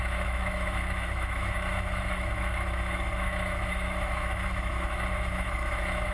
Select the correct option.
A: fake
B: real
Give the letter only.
A